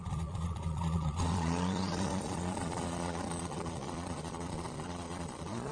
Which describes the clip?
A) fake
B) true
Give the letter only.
A